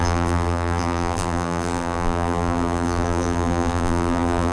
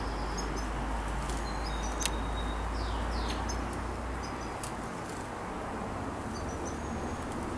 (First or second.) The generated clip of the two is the first